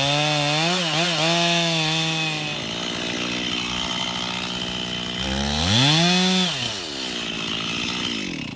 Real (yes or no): yes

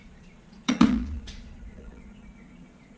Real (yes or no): no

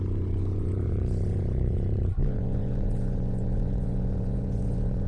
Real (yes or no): no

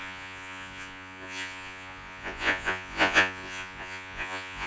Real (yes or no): no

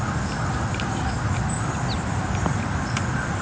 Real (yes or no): yes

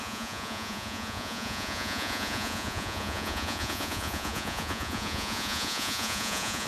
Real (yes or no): no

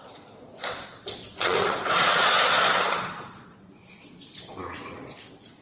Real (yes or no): no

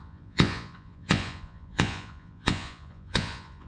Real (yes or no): no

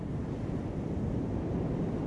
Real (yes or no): yes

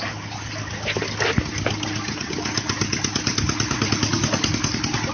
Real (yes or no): yes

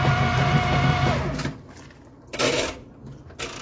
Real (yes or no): yes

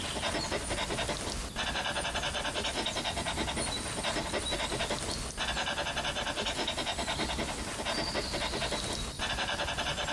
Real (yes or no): yes